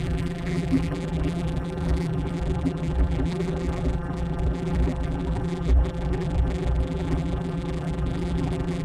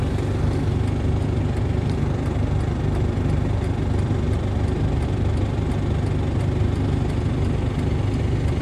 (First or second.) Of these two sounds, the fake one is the first